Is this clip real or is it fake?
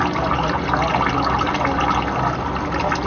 real